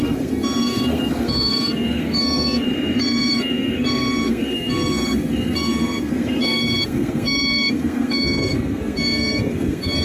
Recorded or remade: remade